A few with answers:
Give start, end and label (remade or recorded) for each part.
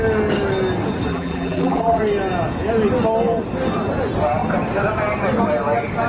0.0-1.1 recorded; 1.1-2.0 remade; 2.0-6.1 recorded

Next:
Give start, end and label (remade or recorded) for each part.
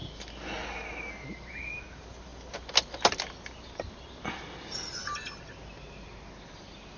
0.0-7.0 recorded